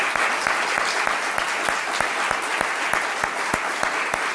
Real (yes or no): yes